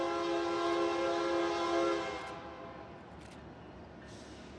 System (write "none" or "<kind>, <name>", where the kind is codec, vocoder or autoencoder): none